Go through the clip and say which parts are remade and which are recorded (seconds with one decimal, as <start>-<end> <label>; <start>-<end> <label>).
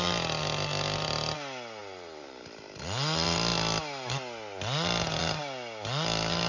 0.0-1.8 recorded; 1.8-2.8 remade; 2.8-6.5 recorded